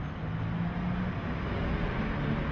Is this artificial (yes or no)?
no